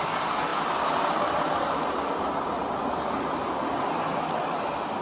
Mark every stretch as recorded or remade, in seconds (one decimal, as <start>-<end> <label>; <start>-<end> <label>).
0.0-5.0 recorded